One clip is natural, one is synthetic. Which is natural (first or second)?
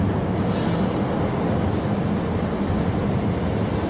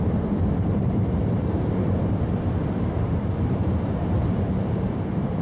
first